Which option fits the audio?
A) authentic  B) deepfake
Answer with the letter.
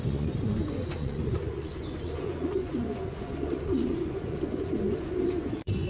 B